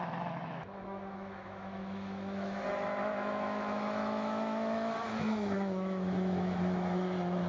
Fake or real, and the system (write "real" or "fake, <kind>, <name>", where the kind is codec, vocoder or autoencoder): fake, autoencoder, DAC-VAE